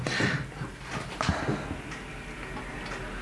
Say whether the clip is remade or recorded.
recorded